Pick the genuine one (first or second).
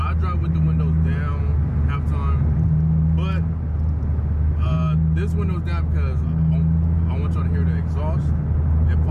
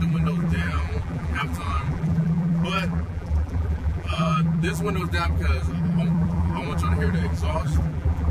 first